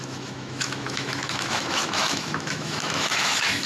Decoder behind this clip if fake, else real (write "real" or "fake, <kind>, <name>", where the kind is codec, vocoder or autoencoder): fake, autoencoder, DAC-VAE